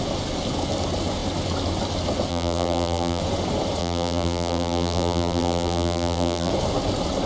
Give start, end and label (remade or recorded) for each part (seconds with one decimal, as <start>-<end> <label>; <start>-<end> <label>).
0.0-2.3 recorded; 2.3-3.2 remade; 3.2-3.8 recorded; 3.8-6.5 remade; 6.5-7.3 recorded